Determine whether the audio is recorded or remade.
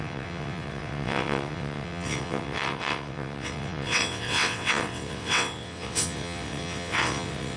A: remade